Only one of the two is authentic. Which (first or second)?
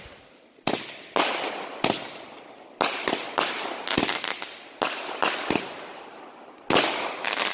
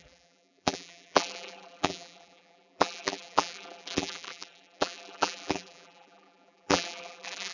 first